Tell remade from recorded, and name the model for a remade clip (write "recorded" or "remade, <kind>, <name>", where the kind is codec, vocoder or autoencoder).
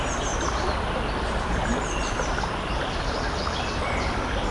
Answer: recorded